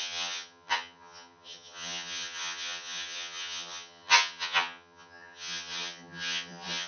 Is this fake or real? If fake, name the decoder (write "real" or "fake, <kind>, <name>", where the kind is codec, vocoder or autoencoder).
fake, vocoder, HiFi-GAN